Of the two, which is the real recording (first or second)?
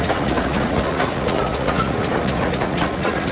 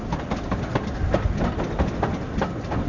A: second